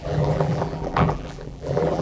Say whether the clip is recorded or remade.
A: remade